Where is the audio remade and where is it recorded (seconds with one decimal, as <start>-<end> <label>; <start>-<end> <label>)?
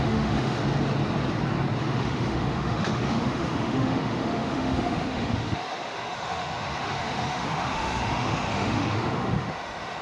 0.0-0.6 remade; 0.6-1.8 recorded; 1.8-10.0 remade